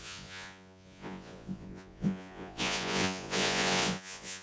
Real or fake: fake